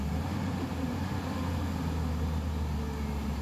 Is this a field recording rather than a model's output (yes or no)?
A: yes